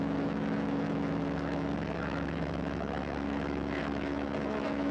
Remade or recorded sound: remade